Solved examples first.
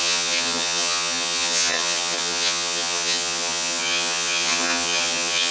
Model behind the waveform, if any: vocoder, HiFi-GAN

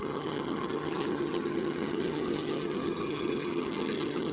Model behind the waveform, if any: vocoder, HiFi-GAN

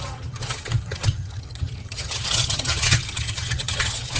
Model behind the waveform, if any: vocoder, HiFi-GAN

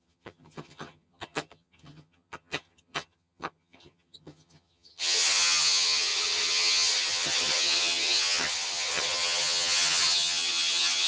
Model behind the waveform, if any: vocoder, HiFi-GAN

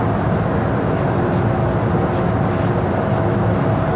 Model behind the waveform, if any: none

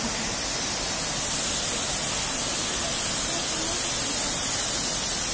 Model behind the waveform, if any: none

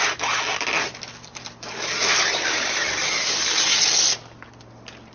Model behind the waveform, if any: none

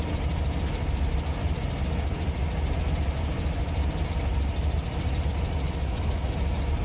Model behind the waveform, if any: none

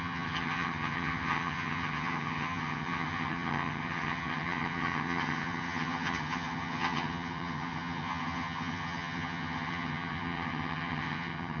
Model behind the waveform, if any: vocoder, HiFi-GAN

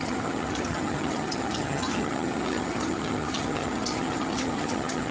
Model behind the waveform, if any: vocoder, HiFi-GAN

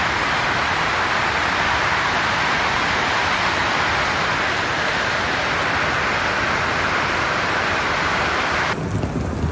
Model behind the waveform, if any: none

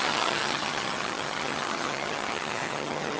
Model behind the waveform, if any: vocoder, HiFi-GAN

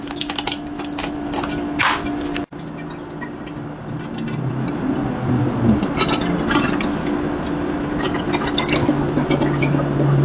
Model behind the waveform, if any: none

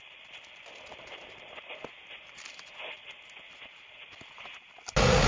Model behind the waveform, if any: none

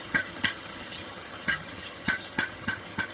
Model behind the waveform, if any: vocoder, HiFi-GAN